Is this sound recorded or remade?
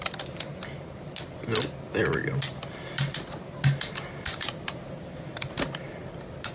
recorded